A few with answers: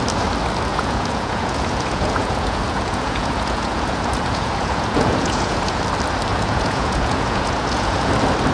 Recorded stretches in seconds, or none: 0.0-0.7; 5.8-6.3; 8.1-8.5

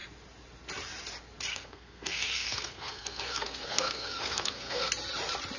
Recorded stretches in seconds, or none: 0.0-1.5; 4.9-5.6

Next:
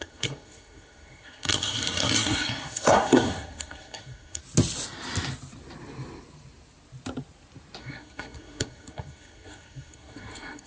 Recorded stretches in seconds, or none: 4.4-7.8

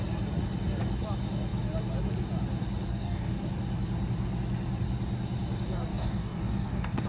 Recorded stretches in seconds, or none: 0.0-2.9; 3.5-5.9